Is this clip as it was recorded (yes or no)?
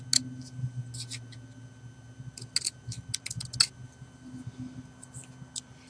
yes